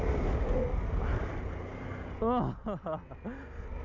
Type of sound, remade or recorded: recorded